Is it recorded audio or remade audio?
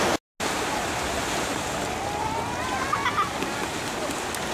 recorded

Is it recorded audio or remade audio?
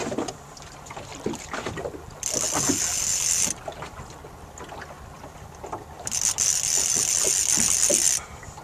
recorded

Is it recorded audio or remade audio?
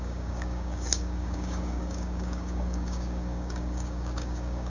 remade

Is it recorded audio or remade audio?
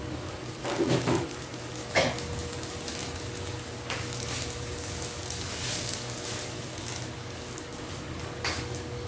remade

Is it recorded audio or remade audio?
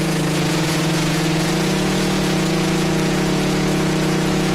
remade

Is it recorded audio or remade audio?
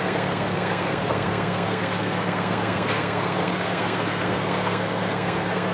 remade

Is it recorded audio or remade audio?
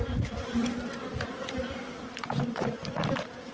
remade